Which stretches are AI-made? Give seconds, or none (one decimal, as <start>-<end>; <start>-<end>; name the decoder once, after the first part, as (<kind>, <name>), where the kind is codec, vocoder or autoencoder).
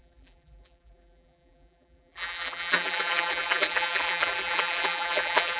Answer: 0.0-5.6 (vocoder, BigVGAN v2)